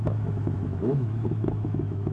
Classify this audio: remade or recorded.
remade